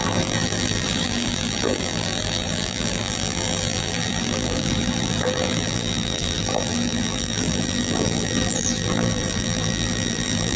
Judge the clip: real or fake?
fake